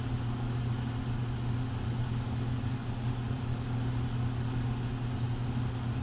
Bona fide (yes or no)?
yes